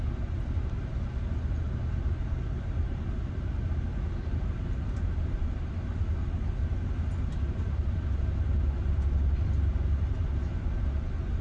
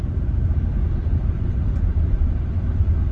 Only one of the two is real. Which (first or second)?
first